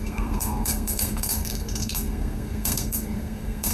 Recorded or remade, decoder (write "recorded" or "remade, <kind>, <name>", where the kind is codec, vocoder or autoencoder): remade, codec, SNAC